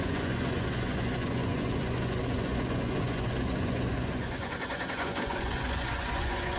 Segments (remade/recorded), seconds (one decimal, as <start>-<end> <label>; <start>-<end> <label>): 0.0-6.6 remade